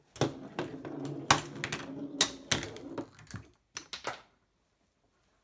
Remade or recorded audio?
recorded